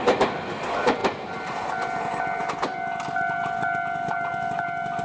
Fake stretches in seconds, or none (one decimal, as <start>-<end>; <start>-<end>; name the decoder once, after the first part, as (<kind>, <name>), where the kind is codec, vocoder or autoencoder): none